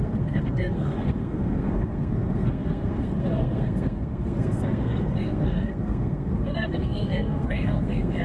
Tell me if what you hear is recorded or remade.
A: remade